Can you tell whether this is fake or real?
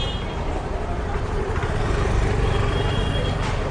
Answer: real